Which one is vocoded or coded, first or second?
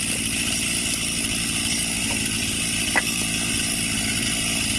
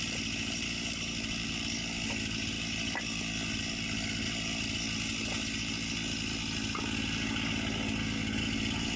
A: first